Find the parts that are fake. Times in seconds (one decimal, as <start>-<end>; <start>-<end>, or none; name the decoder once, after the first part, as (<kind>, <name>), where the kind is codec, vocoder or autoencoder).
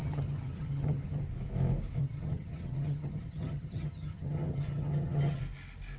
0.0-1.2 (vocoder, HiFi-GAN); 2.0-5.4